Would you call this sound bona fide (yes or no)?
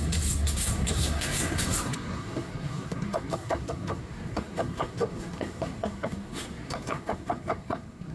no